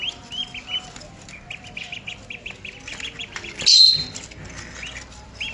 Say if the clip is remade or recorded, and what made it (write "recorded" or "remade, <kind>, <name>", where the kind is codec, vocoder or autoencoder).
recorded